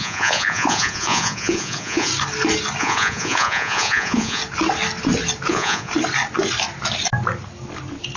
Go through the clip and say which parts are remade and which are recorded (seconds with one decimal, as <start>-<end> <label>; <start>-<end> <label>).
0.0-2.1 remade; 2.1-2.8 recorded; 2.8-4.4 remade; 4.4-5.5 recorded; 5.5-5.9 remade; 5.9-8.2 recorded